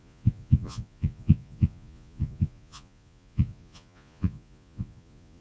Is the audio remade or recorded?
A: remade